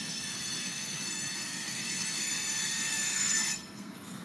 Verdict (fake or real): fake